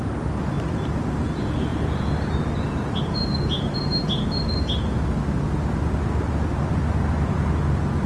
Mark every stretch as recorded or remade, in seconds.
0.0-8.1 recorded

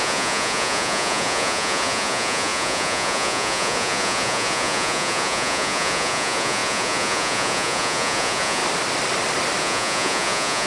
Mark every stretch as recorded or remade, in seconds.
0.0-8.6 remade; 8.6-9.6 recorded; 9.6-10.7 remade

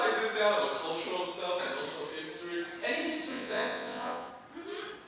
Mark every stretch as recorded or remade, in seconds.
0.0-3.3 recorded; 3.3-4.3 remade; 4.3-5.1 recorded